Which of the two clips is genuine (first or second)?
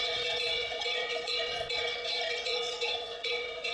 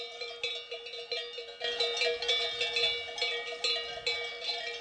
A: second